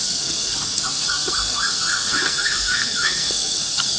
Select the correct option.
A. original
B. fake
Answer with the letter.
B